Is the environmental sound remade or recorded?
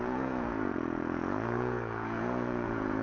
remade